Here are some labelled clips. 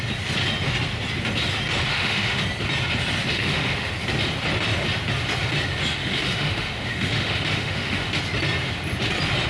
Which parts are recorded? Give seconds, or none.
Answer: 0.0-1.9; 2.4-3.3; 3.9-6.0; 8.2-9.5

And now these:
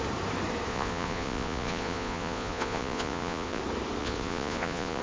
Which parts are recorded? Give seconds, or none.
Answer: 0.0-0.7; 3.6-4.0

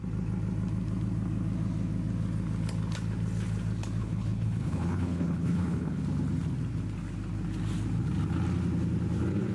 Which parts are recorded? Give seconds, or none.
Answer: 0.0-4.0; 6.0-9.5

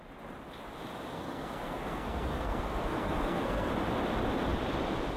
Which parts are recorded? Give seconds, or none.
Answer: 0.0-1.1; 3.7-5.2

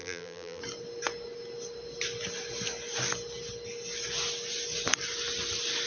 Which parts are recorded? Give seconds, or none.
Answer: 0.6-5.9

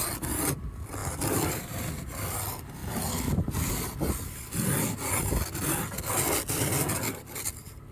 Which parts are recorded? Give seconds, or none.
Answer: 0.0-1.0; 2.1-7.9